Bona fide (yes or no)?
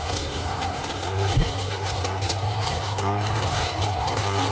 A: no